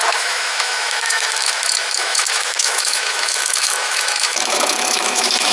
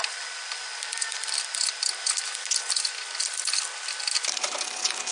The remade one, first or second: first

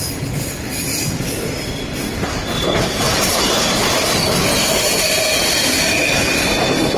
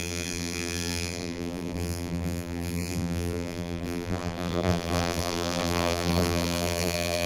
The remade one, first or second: second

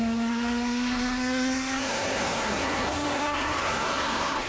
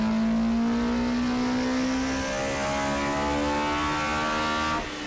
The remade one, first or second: first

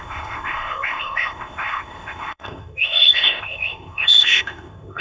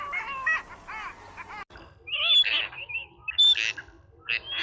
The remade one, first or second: first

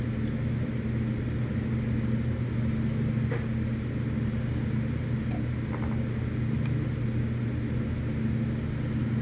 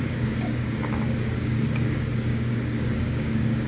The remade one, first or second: second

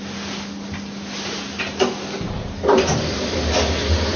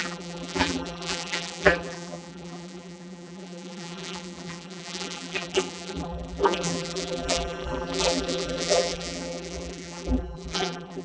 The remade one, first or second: second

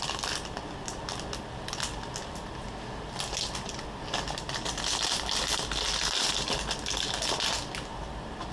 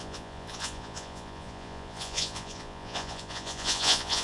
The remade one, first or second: second